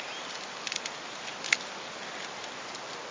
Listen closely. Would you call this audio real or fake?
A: real